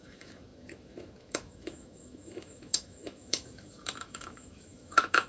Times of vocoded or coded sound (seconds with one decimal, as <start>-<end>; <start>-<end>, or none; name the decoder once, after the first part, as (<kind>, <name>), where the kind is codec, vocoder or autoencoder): 0.0-5.3 (autoencoder, DAC-VAE)

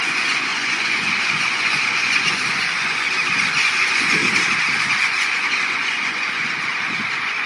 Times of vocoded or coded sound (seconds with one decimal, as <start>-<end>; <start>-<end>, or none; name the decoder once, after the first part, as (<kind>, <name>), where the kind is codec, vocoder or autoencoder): 0.0-4.2 (vocoder, Vocos); 4.8-7.5

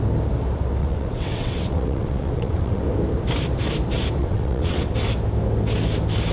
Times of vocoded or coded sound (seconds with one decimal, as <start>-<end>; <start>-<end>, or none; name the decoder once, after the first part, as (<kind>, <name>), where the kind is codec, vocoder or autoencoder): 0.8-2.8 (vocoder, WaveNeXt); 4.2-4.9

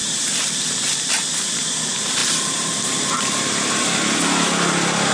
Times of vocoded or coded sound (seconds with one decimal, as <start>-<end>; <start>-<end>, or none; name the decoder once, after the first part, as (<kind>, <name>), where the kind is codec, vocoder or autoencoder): none

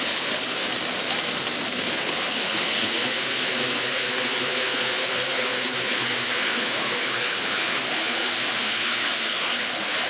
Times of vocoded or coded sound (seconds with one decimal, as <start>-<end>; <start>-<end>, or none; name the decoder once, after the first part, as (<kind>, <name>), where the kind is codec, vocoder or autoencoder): 0.0-0.7 (codec, HILCodec); 1.6-10.1

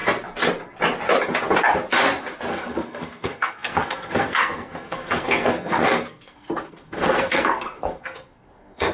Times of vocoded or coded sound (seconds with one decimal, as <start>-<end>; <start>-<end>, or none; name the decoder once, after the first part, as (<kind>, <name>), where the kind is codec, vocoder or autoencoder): 2.5-8.9 (codec, SNAC)